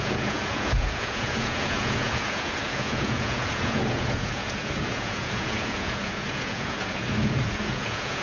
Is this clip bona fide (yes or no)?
no